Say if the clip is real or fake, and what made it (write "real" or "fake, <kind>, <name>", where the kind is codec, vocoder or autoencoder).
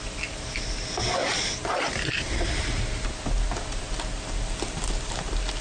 real